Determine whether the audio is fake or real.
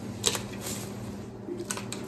real